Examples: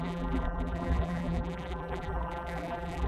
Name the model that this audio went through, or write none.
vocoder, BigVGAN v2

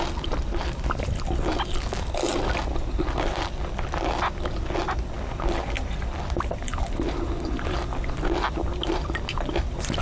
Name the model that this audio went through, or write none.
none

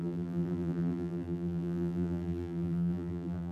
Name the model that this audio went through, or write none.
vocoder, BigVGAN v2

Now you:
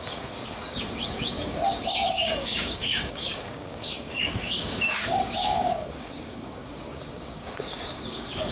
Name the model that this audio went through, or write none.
codec, DAC